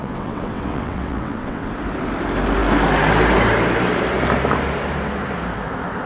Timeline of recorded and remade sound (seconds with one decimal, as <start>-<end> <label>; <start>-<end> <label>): 0.0-1.7 remade; 1.7-6.1 recorded